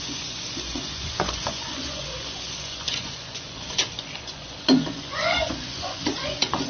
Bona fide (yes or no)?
no